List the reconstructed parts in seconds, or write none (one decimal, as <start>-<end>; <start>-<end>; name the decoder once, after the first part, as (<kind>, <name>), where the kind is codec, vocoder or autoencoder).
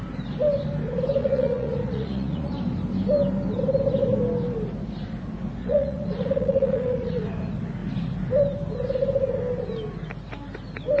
1.2-2.5 (vocoder, Vocos); 5.6-7.2